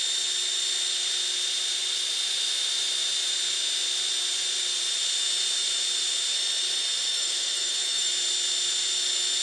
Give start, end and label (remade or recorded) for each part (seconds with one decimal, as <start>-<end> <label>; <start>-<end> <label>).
0.0-7.1 recorded; 7.1-8.1 remade; 8.1-9.4 recorded